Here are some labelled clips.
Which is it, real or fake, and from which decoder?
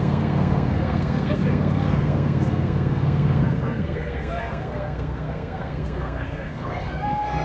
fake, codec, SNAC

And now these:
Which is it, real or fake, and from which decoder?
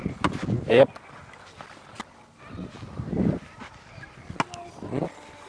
real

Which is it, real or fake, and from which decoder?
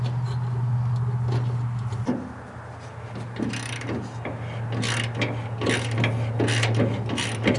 real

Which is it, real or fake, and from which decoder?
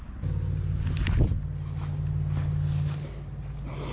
real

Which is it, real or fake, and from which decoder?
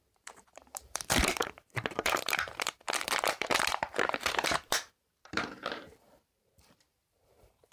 fake, vocoder, BigVGAN v2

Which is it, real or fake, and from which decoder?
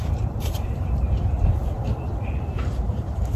fake, vocoder, BigVGAN v2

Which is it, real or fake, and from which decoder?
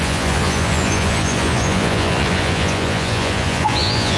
fake, vocoder, Vocos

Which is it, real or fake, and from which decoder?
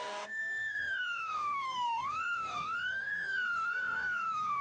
fake, codec, DAC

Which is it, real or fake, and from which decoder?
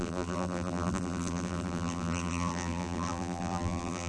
fake, vocoder, BigVGAN v2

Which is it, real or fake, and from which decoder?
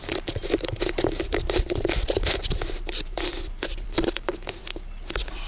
fake, vocoder, BigVGAN v2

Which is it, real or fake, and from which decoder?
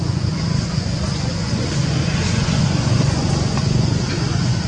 fake, vocoder, Vocos